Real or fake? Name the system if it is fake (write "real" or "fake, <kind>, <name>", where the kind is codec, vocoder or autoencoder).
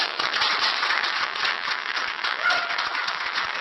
fake, vocoder, WaveNeXt